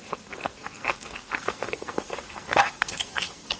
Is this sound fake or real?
fake